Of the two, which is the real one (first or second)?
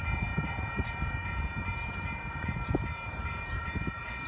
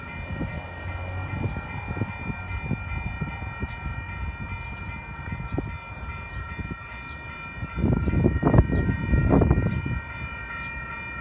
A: second